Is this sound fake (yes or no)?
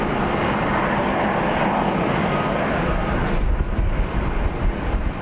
no